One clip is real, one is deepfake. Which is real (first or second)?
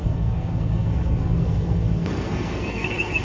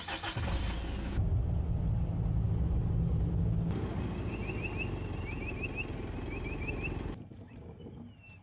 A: second